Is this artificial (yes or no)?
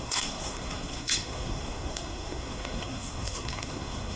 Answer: yes